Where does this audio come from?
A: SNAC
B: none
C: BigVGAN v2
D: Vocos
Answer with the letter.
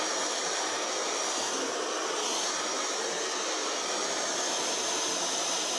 B